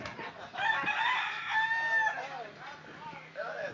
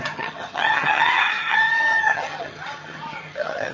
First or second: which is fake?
second